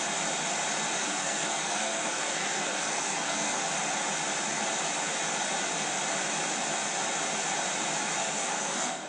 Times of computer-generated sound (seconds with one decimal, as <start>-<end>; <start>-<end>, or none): 1.1-3.6; 8.2-9.1